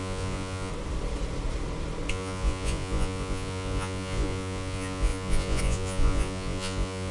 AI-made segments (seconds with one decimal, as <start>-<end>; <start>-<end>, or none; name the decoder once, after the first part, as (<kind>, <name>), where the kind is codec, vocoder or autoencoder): 0.0-0.7 (vocoder, Vocos); 2.1-7.1

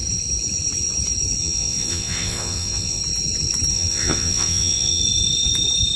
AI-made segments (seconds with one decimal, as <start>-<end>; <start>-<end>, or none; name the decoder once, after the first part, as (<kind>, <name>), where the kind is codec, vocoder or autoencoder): 1.4-3.0 (vocoder, Vocos); 3.7-5.0

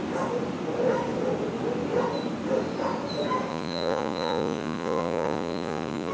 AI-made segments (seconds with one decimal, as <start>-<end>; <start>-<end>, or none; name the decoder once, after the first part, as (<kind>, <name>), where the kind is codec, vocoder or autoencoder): 3.5-6.1 (vocoder, Vocos)

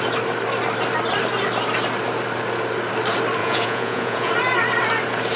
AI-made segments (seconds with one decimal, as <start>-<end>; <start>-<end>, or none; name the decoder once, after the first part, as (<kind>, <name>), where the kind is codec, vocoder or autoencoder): 3.4-4.3 (vocoder, Vocos)

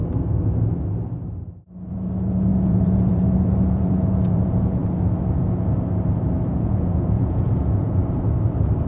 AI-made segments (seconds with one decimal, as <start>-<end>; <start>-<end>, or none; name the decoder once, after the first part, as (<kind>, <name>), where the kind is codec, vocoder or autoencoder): 1.9-4.8 (vocoder, Vocos); 6.5-8.0

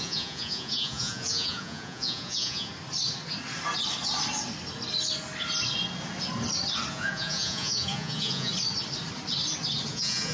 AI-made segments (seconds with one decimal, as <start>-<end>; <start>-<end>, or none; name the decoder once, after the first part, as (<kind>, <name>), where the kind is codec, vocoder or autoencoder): 0.0-2.7 (vocoder, Vocos); 6.9-8.5; 9.9-10.3

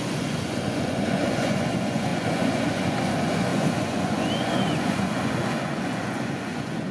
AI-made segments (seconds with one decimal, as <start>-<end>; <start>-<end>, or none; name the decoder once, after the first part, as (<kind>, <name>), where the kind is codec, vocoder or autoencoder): 0.0-6.9 (vocoder, Vocos)

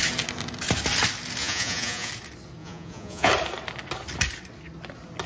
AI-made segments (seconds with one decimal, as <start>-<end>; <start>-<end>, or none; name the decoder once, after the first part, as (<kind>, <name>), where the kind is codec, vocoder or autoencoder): 1.4-2.1 (vocoder, Vocos); 2.6-3.3